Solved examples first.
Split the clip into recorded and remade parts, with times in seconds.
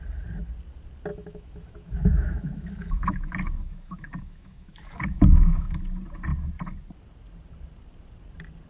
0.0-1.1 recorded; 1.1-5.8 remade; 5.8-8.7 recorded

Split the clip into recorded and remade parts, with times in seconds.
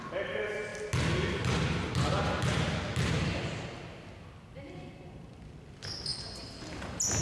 0.0-7.2 recorded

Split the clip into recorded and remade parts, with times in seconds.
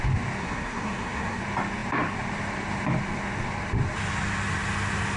0.0-0.4 recorded; 0.4-1.4 remade; 1.4-5.2 recorded